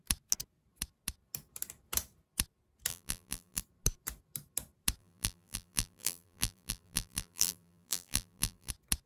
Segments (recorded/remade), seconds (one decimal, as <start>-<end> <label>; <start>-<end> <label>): 0.0-2.9 recorded; 2.9-3.6 remade; 3.6-5.0 recorded; 5.0-8.7 remade; 8.7-9.1 recorded